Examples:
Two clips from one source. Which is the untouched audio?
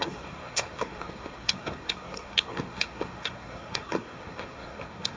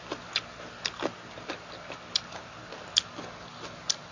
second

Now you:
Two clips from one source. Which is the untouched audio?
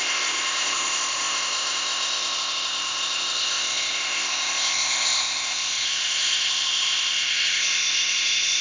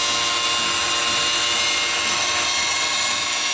second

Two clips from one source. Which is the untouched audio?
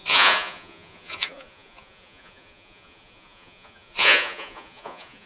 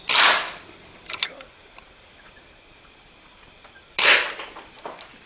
second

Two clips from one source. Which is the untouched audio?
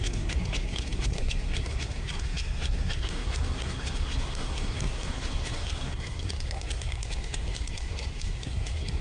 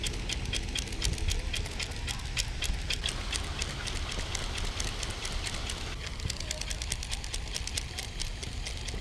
second